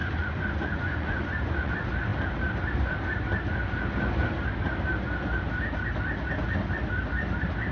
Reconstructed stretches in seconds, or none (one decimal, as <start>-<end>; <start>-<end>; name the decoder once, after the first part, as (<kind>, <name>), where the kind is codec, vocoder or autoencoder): 0.0-1.7 (vocoder, Vocos)